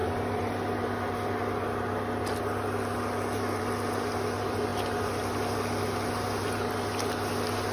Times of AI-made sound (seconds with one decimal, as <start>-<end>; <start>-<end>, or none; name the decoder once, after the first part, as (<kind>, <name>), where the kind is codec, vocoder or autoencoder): none